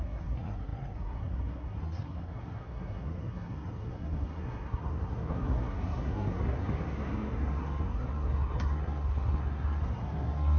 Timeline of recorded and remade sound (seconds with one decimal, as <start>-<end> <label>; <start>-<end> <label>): 0.0-10.6 remade